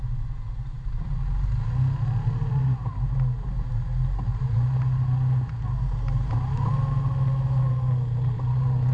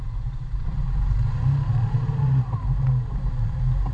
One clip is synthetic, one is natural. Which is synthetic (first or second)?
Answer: second